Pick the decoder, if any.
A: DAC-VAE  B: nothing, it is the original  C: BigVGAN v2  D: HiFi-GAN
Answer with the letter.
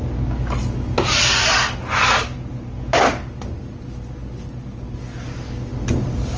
B